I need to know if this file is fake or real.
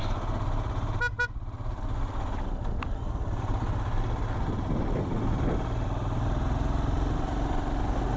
real